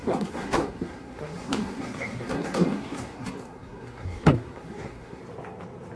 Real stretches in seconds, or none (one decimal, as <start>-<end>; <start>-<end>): 5.2-6.0